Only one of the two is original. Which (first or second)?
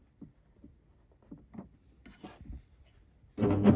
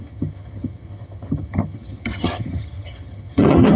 first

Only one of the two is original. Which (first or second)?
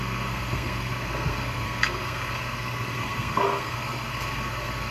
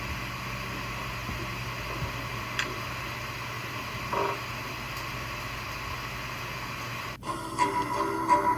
second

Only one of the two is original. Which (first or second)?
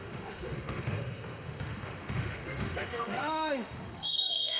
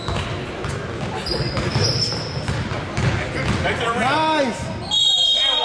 second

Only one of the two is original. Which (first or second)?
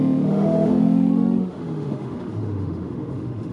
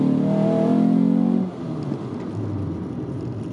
second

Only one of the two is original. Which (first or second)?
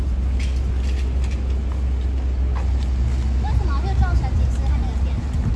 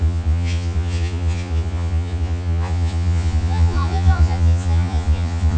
first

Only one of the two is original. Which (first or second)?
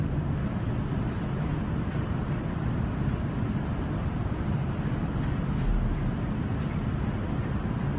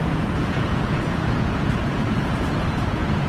first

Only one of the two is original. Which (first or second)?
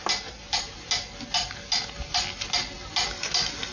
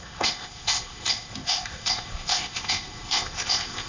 first